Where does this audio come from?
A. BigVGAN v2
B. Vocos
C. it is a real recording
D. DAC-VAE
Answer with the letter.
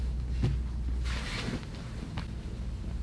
C